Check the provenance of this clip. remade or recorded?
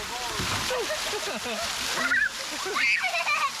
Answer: recorded